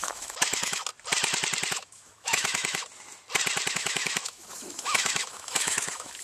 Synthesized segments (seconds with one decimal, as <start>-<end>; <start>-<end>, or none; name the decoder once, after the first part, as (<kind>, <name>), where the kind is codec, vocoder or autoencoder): 0.0-0.8 (autoencoder, DAC-VAE); 1.7-2.8; 3.7-6.2

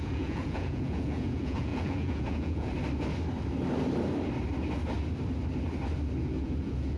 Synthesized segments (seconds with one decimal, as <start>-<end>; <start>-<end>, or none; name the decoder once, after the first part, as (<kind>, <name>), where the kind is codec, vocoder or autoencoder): 0.0-2.7 (vocoder, Vocos); 6.2-7.0

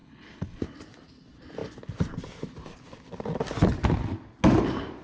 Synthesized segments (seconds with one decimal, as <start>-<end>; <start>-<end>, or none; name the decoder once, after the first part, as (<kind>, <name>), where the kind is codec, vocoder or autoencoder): 0.0-0.6 (codec, HILCodec)

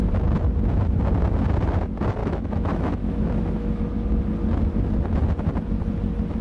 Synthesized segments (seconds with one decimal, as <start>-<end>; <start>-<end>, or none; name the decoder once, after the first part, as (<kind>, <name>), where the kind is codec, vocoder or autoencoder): 2.2-3.8 (autoencoder, DAC-VAE)

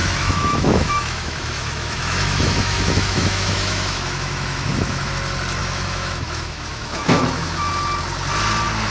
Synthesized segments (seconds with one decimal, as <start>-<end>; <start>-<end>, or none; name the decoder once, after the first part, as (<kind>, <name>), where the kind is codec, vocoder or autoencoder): 0.0-5.1 (autoencoder, DAC-VAE); 5.6-7.7

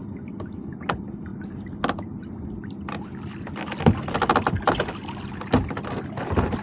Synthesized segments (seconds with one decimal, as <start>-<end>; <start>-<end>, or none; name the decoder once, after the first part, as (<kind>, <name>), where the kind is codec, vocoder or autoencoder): none

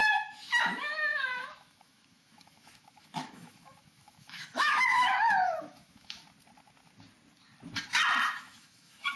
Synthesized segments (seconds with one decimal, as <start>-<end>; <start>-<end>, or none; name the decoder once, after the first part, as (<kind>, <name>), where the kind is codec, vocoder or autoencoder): 0.0-6.2 (autoencoder, DAC-VAE); 8.4-9.2